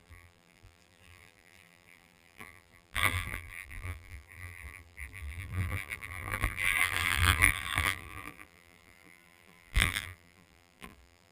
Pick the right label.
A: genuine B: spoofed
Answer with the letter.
B